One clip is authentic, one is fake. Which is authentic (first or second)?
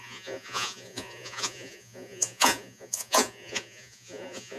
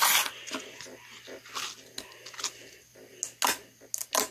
second